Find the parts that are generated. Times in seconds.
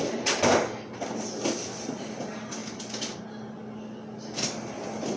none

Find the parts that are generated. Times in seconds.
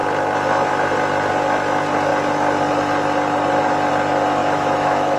4.4-5.2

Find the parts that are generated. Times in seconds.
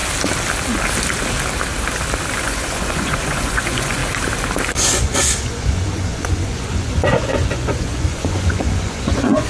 2.4-4.0; 4.7-9.5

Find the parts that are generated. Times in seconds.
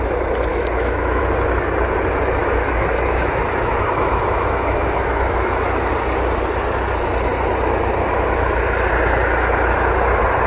0.5-1.2; 2.4-5.9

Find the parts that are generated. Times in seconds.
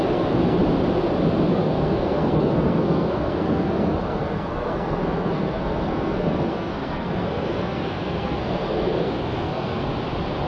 0.0-0.6; 1.5-9.9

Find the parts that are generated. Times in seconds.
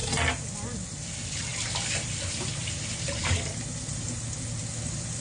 none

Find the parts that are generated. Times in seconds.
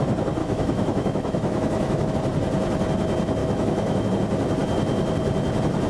0.4-2.1; 3.4-4.1